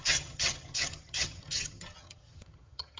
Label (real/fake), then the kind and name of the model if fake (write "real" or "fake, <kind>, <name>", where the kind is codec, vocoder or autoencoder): fake, vocoder, HiFi-GAN